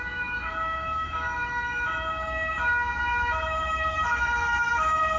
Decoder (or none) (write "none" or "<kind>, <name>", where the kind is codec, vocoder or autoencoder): autoencoder, DAC-VAE